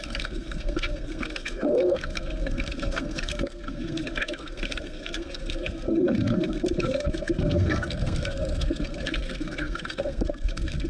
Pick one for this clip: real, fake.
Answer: fake